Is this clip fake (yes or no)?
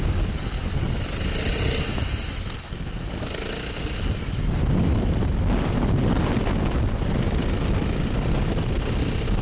no